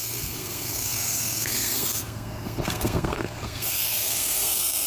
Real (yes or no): no